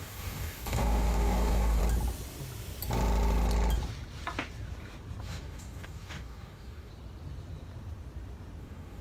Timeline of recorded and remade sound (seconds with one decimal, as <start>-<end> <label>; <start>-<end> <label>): 0.0-1.8 remade; 1.8-5.2 recorded; 5.2-6.9 remade; 6.9-8.6 recorded; 8.6-9.0 remade